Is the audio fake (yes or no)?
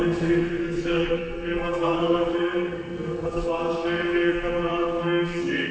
yes